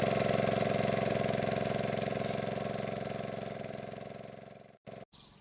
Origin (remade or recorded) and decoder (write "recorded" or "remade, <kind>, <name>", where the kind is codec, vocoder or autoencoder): recorded